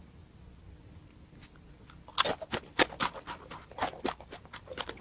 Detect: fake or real real